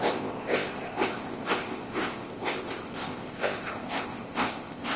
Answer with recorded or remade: remade